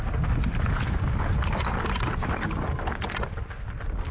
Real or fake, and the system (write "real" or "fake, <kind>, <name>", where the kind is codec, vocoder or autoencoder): real